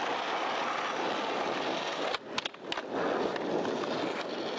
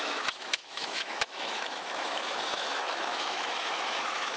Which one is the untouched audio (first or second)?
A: first